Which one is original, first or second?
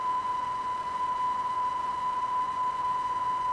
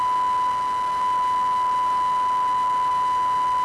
second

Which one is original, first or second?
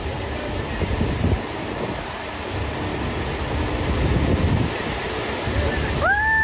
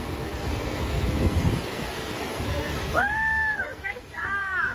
first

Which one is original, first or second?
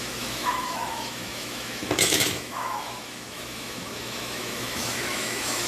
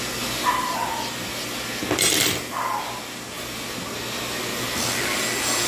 second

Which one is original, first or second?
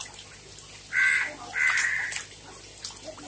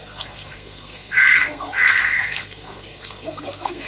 first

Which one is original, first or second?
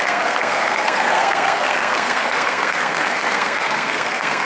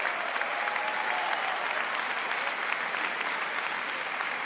second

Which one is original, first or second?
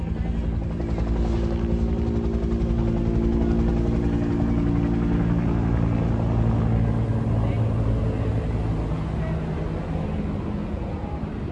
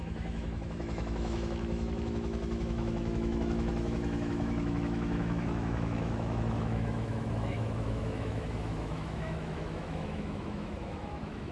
first